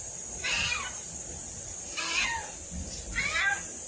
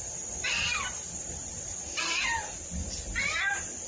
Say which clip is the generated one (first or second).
second